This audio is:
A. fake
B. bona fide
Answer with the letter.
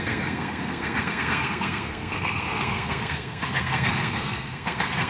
A